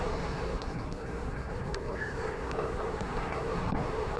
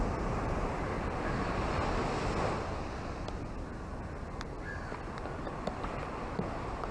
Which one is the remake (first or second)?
first